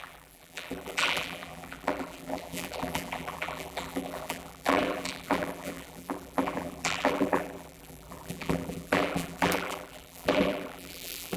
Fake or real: fake